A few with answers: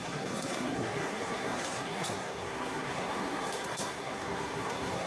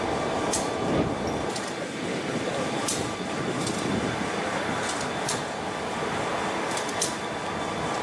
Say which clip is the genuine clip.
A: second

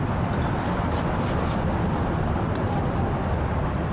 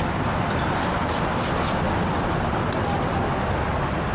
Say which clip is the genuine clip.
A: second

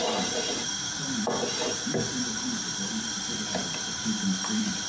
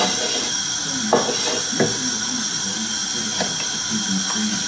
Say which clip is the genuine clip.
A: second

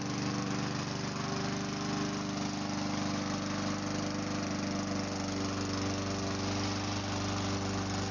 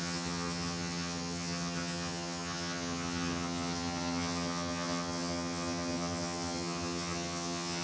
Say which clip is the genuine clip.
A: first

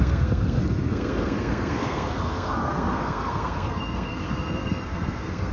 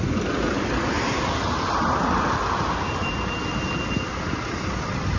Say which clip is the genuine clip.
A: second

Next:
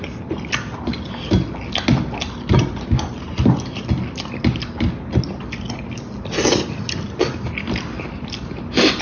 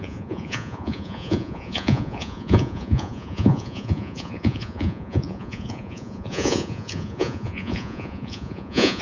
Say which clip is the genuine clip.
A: first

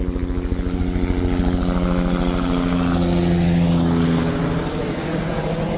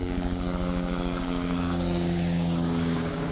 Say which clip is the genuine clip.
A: first